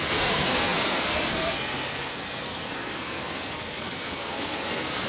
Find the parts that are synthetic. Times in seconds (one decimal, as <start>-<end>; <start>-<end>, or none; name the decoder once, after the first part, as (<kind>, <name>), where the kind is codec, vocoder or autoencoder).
0.0-5.1 (codec, SNAC)